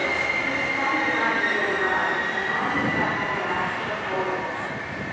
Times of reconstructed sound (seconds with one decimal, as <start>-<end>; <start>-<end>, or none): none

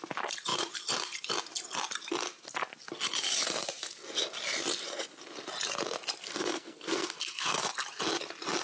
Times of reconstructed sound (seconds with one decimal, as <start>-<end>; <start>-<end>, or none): 6.2-7.6

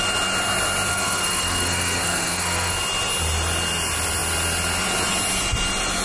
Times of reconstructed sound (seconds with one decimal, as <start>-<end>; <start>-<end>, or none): 0.9-2.7

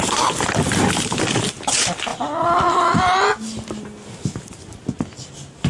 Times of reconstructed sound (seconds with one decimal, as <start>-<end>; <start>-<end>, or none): none

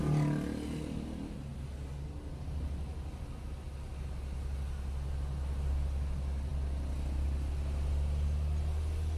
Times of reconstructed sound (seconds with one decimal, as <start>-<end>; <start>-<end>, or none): none

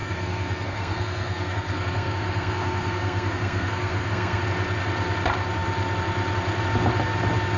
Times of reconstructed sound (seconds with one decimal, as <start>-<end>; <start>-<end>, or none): 0.0-4.4

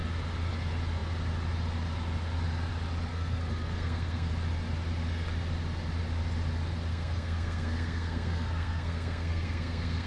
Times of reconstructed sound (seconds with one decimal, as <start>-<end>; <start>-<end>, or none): 3.1-4.3; 6.9-10.1